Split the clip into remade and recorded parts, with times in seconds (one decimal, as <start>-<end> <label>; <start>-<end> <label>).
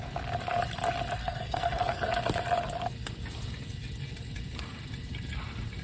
0.0-1.2 recorded; 1.2-2.1 remade; 2.1-5.8 recorded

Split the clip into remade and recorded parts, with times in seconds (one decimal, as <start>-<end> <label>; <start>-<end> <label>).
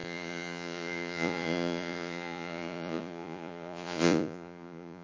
0.0-5.0 remade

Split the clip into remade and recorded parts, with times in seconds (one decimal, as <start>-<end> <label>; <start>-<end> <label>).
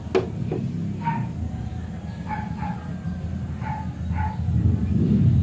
0.0-5.4 recorded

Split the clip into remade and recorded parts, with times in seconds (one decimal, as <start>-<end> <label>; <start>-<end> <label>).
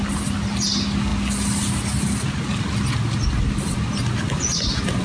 0.0-5.0 recorded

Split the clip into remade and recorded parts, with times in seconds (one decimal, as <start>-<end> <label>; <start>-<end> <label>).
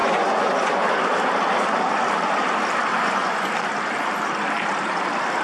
0.0-0.8 remade; 0.8-2.9 recorded; 2.9-3.5 remade; 3.5-5.4 recorded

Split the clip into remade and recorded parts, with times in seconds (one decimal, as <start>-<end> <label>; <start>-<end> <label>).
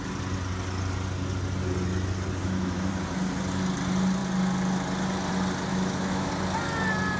0.0-2.4 recorded; 2.4-2.9 remade; 2.9-5.7 recorded; 5.7-6.3 remade; 6.3-7.2 recorded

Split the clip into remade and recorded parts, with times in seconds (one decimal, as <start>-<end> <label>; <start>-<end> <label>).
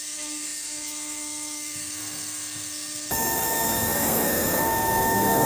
0.0-5.5 remade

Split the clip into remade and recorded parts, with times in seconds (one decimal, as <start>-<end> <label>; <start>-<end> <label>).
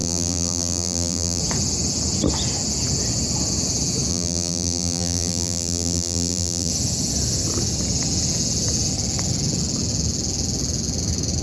0.0-1.4 remade; 1.4-4.1 recorded; 4.1-6.7 remade; 6.7-11.4 recorded